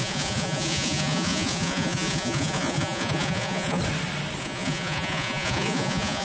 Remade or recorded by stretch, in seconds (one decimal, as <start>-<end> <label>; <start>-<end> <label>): 0.0-3.8 remade; 3.8-4.4 recorded; 4.4-6.2 remade